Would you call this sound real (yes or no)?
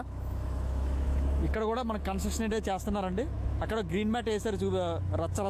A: no